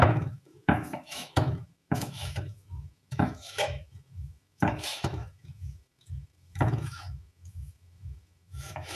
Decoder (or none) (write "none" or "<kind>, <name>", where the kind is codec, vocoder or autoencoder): autoencoder, DAC-VAE